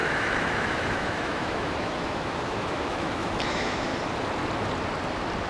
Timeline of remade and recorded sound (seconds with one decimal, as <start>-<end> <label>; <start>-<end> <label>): 0.0-3.9 remade; 3.9-5.5 recorded